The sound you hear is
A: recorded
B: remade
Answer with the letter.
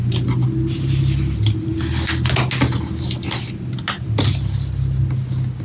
A